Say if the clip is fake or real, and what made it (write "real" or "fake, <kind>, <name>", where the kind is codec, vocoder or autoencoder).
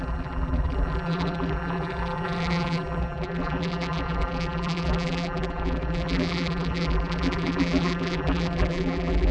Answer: fake, vocoder, BigVGAN v2